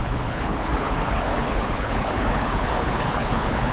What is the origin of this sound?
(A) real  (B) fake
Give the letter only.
B